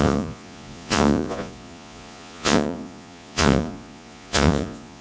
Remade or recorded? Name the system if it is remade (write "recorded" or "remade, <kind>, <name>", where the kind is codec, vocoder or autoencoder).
remade, vocoder, Vocos